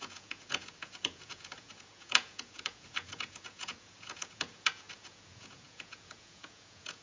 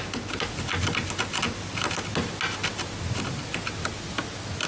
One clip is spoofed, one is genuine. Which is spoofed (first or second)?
first